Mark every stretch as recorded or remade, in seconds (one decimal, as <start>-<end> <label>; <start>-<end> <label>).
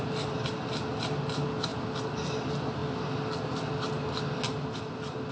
0.0-5.3 recorded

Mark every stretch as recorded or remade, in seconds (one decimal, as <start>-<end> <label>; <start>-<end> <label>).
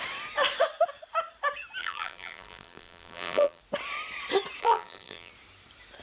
0.0-1.8 recorded; 1.8-3.6 remade; 3.6-4.6 recorded; 4.6-5.3 remade; 5.3-6.0 recorded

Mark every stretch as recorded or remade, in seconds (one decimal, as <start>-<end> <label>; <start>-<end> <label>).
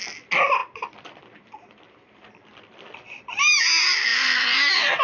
0.0-0.6 recorded; 0.6-3.6 remade; 3.6-5.0 recorded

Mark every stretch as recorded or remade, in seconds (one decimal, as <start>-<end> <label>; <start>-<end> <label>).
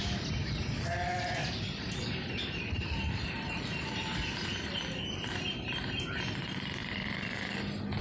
0.0-1.4 recorded; 1.4-6.2 remade; 6.2-6.8 recorded; 6.8-7.6 remade; 7.6-8.0 recorded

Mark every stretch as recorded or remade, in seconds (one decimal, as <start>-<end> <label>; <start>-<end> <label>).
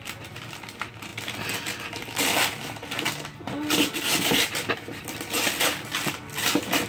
0.0-6.9 recorded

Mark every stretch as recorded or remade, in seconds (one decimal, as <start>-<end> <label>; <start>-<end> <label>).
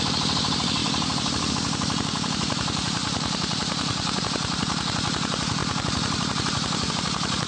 0.0-7.5 remade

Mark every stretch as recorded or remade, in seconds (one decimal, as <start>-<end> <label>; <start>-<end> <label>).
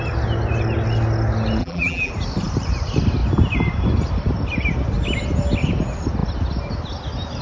0.0-1.6 recorded; 1.6-2.1 remade; 2.1-7.4 recorded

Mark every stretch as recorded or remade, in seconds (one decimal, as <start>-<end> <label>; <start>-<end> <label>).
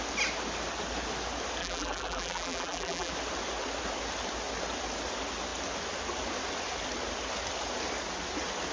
0.0-1.6 recorded; 1.6-3.1 remade; 3.1-8.7 recorded